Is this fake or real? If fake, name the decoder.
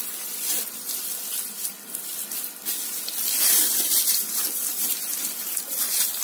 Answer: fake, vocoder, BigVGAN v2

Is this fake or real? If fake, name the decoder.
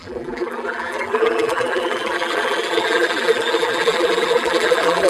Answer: fake, vocoder, BigVGAN v2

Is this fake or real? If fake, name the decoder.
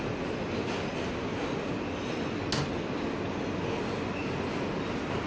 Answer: real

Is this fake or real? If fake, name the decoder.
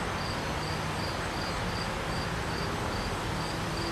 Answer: real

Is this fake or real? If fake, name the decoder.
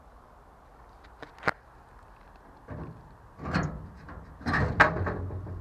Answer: real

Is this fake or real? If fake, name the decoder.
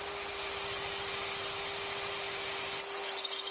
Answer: real